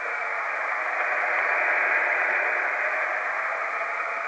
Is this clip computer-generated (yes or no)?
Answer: no